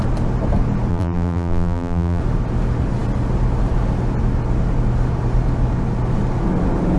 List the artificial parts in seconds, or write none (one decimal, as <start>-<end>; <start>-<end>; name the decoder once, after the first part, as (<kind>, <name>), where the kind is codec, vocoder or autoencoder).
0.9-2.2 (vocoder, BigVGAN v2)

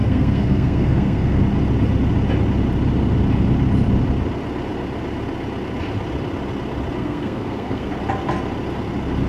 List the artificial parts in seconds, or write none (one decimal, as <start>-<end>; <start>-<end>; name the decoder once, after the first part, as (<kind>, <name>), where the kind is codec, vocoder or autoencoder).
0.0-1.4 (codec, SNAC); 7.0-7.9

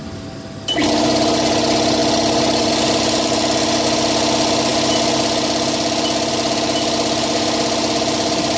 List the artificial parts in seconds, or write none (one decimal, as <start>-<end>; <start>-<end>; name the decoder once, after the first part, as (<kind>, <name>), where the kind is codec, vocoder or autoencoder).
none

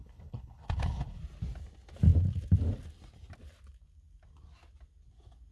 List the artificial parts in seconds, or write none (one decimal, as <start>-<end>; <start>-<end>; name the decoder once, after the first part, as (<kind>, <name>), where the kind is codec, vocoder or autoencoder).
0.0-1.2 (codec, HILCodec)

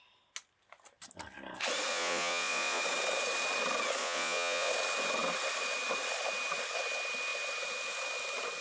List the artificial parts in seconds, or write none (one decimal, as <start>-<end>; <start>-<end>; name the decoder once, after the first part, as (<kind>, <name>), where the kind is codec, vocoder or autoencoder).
1.9-2.8 (vocoder, Vocos); 4.0-4.7

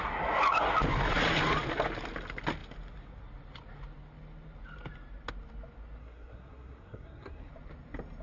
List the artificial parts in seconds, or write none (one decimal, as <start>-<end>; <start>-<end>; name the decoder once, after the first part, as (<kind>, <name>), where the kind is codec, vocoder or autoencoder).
6.0-7.5 (codec, SNAC)

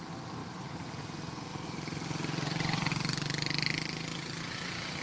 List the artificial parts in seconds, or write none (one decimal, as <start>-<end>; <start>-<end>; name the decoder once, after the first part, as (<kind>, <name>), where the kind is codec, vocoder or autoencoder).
1.5-2.9 (vocoder, BigVGAN v2); 4.1-5.0